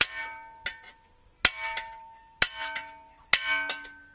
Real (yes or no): yes